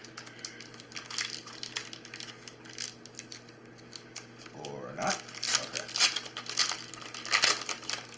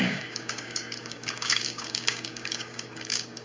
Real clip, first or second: first